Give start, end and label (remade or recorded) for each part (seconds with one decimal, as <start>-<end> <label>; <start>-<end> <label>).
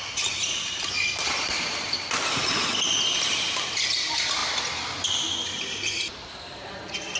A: 0.0-7.2 recorded